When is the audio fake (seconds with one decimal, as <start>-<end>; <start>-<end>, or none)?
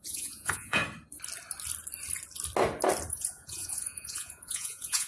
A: 0.0-0.8; 3.1-5.1